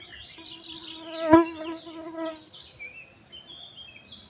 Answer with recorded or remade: recorded